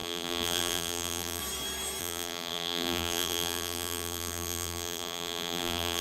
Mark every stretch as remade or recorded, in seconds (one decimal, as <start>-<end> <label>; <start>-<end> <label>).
0.0-1.4 remade; 1.4-2.0 recorded; 2.0-6.0 remade